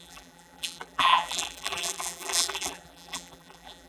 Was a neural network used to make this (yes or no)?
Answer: yes